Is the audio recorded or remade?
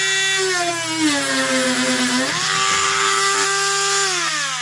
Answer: recorded